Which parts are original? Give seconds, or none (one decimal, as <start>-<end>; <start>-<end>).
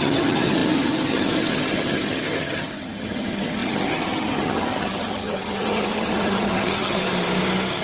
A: 7.0-7.8